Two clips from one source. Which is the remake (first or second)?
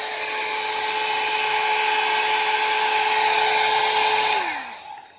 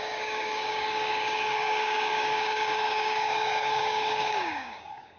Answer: second